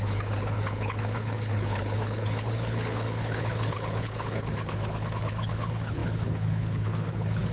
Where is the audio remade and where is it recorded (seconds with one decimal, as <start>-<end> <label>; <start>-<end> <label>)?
0.0-7.5 remade